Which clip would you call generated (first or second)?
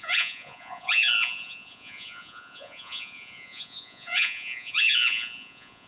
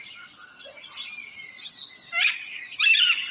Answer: first